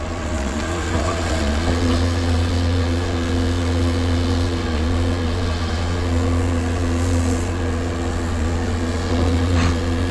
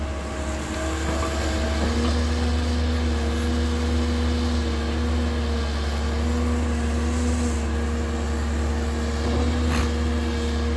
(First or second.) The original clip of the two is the second